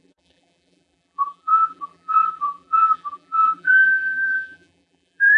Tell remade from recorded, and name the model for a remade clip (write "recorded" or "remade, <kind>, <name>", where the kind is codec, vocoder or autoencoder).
remade, vocoder, BigVGAN v2